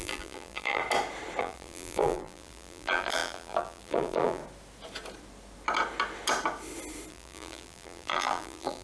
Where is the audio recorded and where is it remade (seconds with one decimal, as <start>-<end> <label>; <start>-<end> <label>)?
0.0-0.8 remade; 0.8-1.4 recorded; 1.4-4.4 remade; 4.4-7.1 recorded; 7.1-8.8 remade